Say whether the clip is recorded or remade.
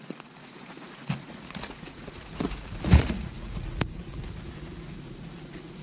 remade